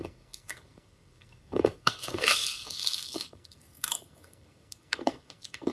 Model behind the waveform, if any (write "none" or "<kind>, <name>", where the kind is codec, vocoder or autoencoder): codec, SNAC